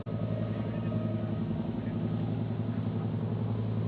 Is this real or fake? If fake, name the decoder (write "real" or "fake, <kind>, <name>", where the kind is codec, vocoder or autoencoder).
real